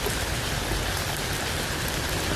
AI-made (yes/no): yes